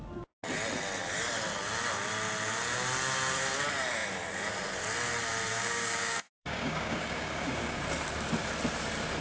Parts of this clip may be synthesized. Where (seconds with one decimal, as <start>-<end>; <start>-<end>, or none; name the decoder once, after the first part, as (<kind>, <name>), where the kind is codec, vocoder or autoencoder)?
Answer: 5.5-7.8 (codec, DAC)